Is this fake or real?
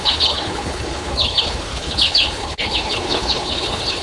fake